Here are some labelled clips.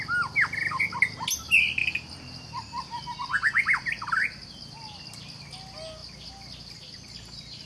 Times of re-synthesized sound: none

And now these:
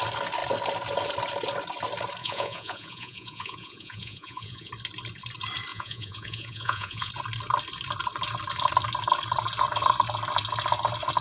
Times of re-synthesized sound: 2.2-4.7; 5.7-7.1

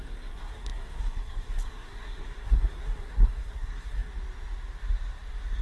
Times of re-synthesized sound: 0.0-4.1

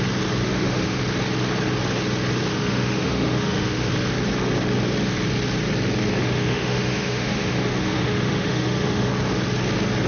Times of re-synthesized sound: 0.4-1.0; 2.5-3.9; 6.2-9.1

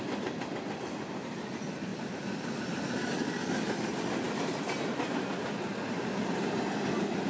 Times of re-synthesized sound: none

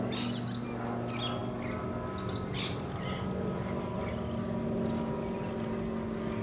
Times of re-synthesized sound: none